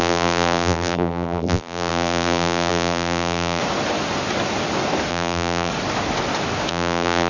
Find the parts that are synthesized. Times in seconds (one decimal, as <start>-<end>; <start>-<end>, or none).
0.0-3.6; 5.1-5.7; 6.7-7.3

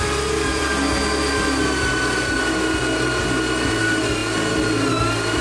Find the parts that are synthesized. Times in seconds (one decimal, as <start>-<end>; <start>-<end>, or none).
none